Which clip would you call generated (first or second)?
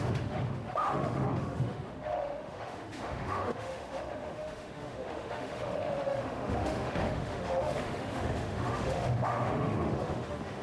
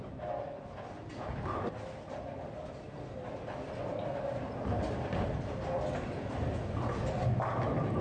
first